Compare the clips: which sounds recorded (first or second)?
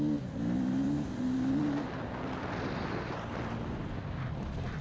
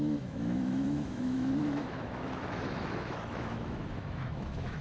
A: first